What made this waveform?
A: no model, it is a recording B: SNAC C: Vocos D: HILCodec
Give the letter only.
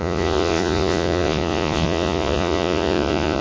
C